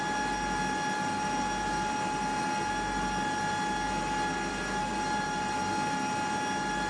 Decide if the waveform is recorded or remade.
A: recorded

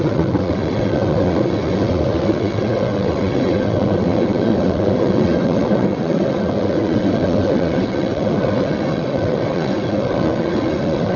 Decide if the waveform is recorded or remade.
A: remade